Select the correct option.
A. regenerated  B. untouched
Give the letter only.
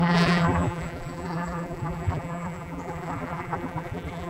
A